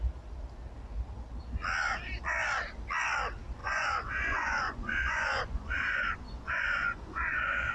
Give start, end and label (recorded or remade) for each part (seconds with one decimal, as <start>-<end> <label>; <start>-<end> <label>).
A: 0.0-3.6 recorded; 3.6-7.7 remade